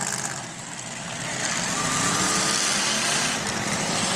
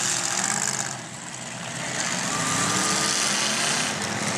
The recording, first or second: second